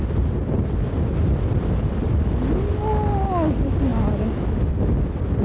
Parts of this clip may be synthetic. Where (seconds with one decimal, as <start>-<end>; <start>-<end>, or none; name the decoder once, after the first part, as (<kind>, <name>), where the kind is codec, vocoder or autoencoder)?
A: none

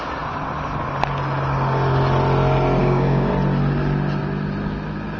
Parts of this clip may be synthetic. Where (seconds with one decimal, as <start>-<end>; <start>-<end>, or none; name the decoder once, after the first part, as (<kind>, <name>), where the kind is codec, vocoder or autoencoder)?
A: 2.8-3.3 (codec, DAC)

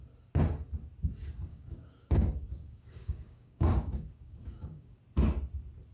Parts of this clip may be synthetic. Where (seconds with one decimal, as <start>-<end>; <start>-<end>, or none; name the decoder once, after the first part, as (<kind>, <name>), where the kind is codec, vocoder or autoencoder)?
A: 1.5-5.0 (codec, DAC)

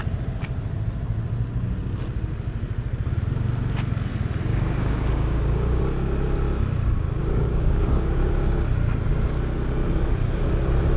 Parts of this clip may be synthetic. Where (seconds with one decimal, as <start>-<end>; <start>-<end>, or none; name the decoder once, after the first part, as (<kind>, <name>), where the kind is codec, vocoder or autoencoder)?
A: 4.5-5.8 (codec, DAC); 7.2-8.3

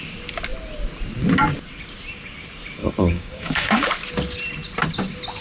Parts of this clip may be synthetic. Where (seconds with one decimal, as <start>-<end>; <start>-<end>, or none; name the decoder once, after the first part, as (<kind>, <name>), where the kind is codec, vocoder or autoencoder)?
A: 2.8-3.9 (codec, DAC)